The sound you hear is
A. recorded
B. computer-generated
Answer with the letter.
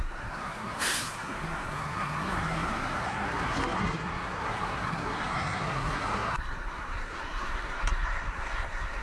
B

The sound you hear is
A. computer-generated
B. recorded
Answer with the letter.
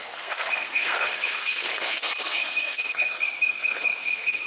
A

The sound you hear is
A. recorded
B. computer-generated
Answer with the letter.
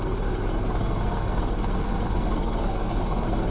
B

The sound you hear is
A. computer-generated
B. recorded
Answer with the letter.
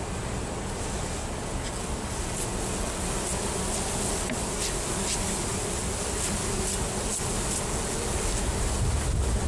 B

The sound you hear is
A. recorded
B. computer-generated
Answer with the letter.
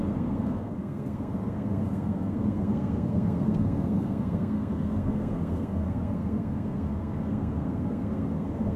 B